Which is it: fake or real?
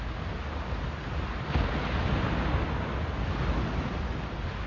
real